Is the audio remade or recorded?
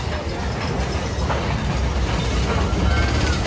recorded